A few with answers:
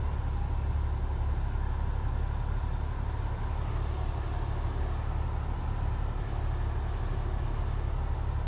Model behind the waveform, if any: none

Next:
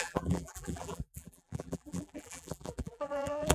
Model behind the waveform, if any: vocoder, BigVGAN v2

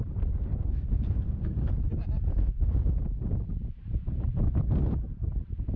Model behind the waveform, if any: vocoder, BigVGAN v2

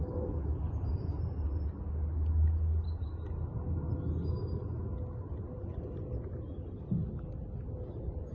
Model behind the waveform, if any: none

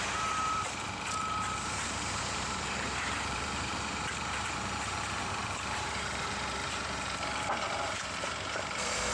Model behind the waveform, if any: vocoder, BigVGAN v2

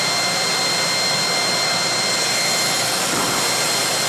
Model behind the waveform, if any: none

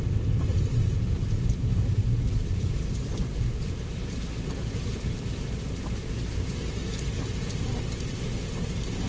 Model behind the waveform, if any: none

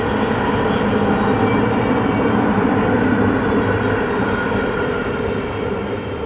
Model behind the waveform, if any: none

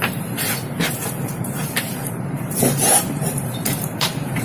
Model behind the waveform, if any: vocoder, BigVGAN v2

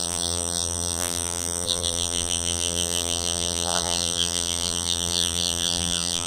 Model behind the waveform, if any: vocoder, BigVGAN v2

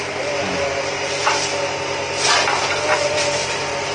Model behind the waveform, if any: none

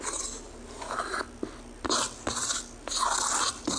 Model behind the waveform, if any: none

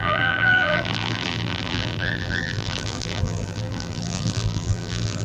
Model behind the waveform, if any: vocoder, BigVGAN v2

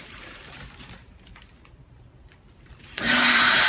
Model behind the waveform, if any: vocoder, BigVGAN v2